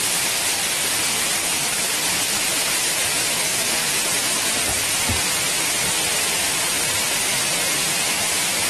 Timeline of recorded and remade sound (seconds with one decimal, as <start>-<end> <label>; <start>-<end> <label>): 0.0-1.4 recorded; 1.4-1.9 remade; 1.9-8.7 recorded